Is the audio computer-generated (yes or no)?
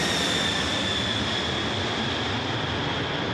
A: no